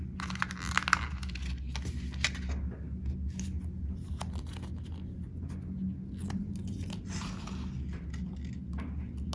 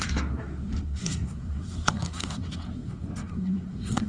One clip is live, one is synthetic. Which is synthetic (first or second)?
second